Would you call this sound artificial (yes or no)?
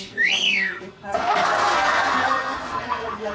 yes